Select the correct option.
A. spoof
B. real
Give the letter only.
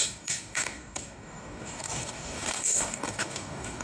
A